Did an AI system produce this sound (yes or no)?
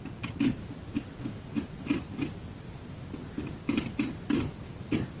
no